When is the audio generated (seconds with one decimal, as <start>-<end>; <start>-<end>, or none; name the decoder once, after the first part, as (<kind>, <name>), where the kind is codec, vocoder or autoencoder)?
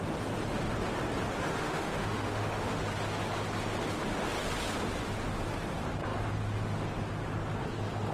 1.5-2.8 (autoencoder, DAC-VAE)